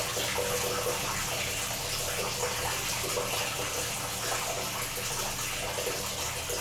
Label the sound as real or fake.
real